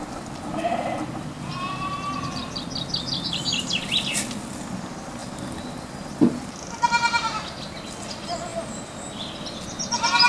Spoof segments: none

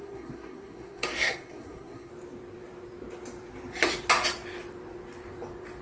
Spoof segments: 0.0-2.1 (codec, SNAC)

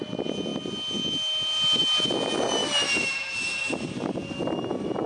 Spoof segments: 2.6-4.1 (vocoder, BigVGAN v2)

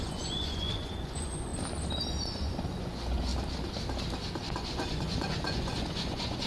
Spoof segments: 0.0-1.5 (vocoder, Vocos); 2.2-3.3; 4.4-6.5

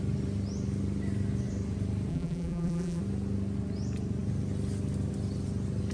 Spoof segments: 2.1-3.0 (vocoder, BigVGAN v2)

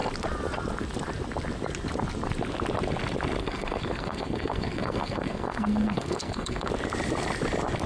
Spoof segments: 3.4-6.7 (codec, SNAC)